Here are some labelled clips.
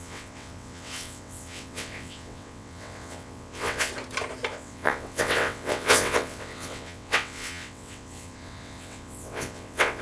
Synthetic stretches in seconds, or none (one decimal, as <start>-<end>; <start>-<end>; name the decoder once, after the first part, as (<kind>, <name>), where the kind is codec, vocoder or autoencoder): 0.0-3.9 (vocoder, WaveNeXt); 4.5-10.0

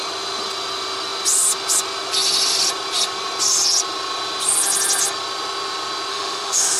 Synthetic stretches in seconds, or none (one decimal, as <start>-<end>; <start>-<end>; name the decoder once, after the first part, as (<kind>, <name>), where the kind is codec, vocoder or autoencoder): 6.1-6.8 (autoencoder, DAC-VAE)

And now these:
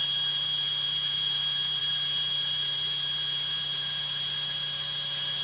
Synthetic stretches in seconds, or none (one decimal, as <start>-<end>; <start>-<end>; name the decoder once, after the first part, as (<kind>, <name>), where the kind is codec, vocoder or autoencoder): none

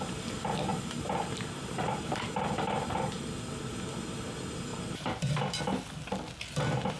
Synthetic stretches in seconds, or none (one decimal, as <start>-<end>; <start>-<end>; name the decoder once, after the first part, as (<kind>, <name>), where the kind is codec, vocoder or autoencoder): 0.7-3.1 (vocoder, BigVGAN v2); 4.7-5.6